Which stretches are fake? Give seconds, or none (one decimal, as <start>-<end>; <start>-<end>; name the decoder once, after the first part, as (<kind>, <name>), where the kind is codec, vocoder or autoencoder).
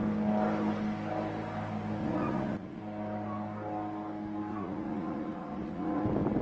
2.0-2.8 (vocoder, Vocos); 4.5-6.0